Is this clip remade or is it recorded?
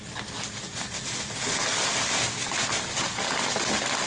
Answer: recorded